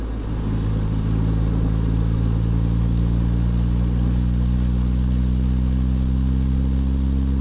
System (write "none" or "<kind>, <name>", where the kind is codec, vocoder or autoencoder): none